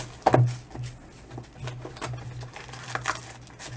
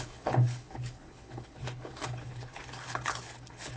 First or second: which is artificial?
second